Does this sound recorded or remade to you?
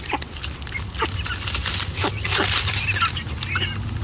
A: recorded